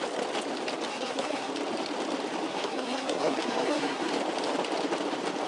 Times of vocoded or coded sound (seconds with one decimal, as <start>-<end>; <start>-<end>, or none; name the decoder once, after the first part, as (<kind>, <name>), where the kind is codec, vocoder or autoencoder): 0.9-1.5 (codec, SNAC); 2.5-4.1